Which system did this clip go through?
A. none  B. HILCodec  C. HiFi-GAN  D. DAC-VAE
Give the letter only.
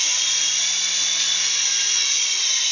A